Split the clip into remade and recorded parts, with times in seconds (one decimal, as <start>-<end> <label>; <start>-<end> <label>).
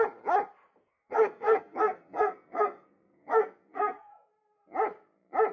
0.0-0.8 recorded; 0.8-4.1 remade; 4.1-5.5 recorded